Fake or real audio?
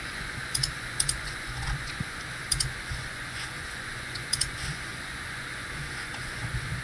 fake